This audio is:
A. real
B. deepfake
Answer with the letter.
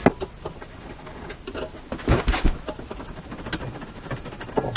A